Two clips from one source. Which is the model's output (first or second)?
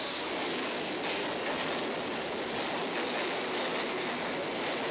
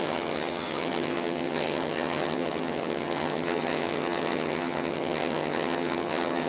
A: second